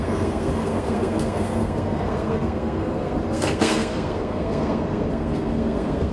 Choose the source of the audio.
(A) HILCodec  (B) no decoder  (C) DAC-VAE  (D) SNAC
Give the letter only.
D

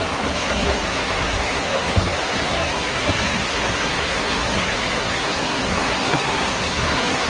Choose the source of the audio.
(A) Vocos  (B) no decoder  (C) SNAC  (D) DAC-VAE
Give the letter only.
C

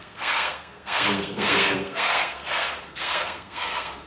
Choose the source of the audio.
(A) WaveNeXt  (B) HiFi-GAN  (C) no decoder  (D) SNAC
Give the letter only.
D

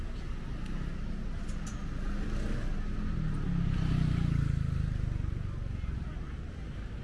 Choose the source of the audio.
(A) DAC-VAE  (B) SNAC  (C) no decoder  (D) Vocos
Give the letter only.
C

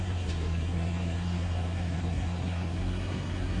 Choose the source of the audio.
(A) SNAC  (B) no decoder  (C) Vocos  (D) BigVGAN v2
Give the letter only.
A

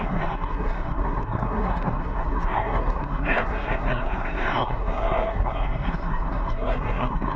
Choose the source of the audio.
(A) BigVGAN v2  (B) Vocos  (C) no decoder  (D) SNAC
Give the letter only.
D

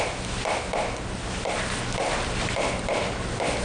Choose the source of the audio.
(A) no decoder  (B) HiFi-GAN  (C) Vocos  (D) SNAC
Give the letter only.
A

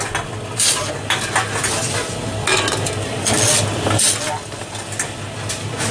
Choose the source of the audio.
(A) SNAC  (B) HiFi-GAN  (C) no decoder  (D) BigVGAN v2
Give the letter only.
C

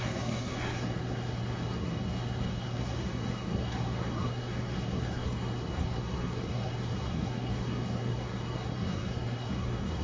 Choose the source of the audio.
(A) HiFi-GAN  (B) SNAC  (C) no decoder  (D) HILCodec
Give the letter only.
B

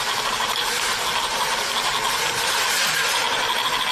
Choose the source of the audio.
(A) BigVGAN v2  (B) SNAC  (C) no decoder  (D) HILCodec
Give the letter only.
C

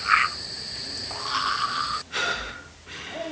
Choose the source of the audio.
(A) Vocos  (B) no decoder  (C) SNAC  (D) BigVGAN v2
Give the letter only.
B